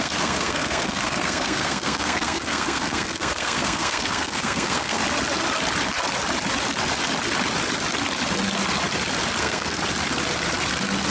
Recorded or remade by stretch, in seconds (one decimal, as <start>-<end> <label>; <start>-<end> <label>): 0.0-5.0 remade; 5.0-9.4 recorded; 9.4-9.8 remade; 9.8-11.1 recorded